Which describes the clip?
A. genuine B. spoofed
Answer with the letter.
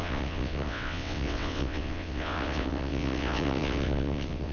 B